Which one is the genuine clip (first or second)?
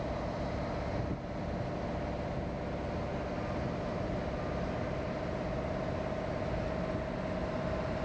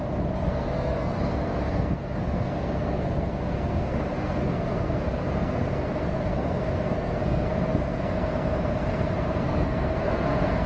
first